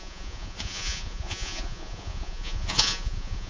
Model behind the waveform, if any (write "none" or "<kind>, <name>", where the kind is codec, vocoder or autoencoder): vocoder, Vocos